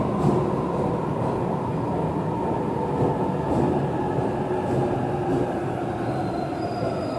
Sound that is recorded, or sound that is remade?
recorded